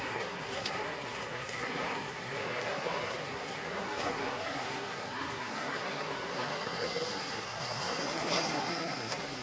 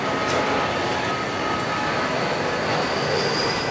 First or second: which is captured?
second